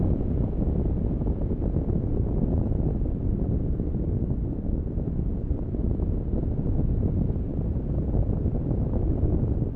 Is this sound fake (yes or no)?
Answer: no